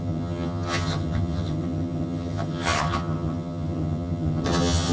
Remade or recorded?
remade